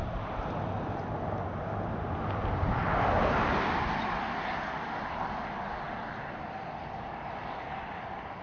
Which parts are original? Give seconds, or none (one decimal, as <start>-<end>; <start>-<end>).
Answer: 0.0-8.4